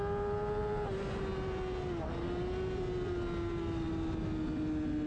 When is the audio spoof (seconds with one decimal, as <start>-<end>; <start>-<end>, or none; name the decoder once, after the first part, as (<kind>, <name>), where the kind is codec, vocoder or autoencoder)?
none